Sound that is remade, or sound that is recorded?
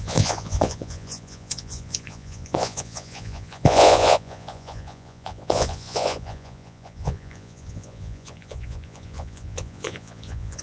remade